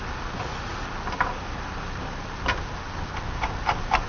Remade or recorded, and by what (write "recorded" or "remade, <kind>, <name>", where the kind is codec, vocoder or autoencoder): recorded